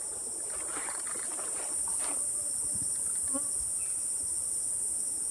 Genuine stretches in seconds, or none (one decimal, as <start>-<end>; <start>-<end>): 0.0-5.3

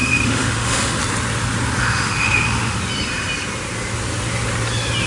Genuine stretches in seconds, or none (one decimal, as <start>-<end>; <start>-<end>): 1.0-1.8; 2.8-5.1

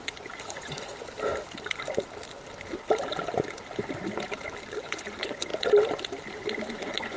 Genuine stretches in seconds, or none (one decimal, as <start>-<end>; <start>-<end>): 0.9-4.8; 5.5-6.7

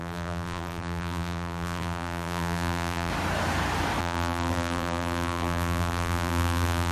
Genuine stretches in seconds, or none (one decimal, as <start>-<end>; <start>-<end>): 3.1-4.0

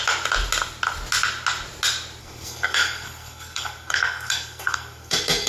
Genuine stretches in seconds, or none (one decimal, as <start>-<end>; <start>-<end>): 0.0-2.2

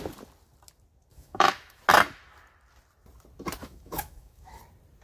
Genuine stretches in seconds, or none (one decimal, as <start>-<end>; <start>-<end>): 0.0-1.1; 1.8-3.6; 4.6-5.0